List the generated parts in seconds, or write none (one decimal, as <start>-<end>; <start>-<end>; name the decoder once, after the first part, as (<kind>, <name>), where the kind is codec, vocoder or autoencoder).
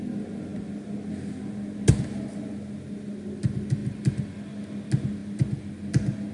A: none